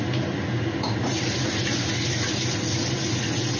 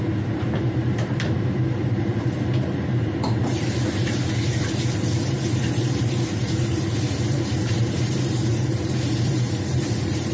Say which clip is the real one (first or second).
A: first